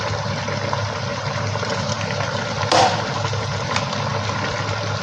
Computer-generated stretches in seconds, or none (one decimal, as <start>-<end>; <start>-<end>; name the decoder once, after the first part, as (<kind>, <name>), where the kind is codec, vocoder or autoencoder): 1.1-2.8 (vocoder, BigVGAN v2)